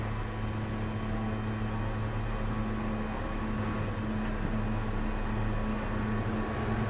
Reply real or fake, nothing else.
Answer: real